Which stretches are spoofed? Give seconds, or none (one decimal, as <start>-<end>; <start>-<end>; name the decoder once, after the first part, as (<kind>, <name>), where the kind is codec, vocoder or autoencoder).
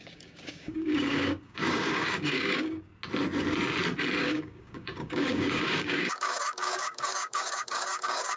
0.0-2.9 (codec, DAC); 4.2-8.4